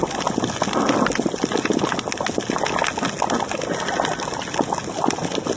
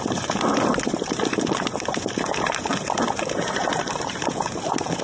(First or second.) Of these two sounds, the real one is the first